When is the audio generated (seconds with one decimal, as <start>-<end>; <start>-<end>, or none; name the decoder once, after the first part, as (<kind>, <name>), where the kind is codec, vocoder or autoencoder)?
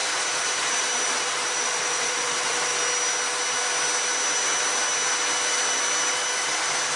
0.0-2.7 (vocoder, BigVGAN v2)